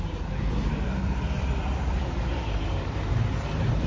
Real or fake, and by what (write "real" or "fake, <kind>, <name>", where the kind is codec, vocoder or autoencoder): fake, vocoder, BigVGAN v2